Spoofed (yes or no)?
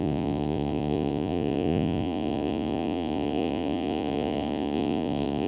yes